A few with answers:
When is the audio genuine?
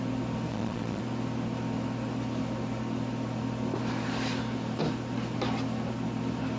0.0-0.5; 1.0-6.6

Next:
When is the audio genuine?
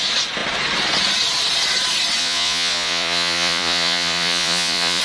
0.0-2.2